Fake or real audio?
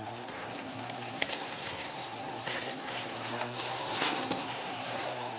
fake